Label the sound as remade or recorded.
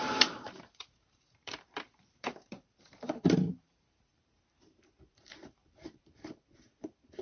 remade